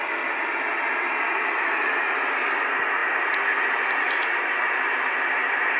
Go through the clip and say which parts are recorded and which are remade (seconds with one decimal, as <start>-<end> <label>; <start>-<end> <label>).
0.0-5.8 recorded